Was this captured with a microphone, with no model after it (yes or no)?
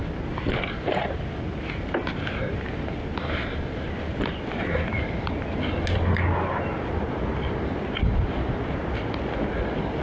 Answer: yes